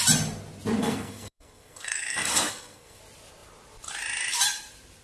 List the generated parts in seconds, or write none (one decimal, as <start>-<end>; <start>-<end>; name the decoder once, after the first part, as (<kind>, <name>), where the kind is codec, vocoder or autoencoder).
0.8-3.0 (codec, SNAC)